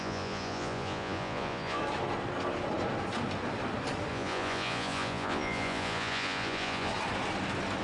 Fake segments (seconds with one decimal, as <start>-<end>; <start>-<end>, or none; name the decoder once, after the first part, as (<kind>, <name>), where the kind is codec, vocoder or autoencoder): 0.0-1.8 (vocoder, Vocos); 4.1-6.9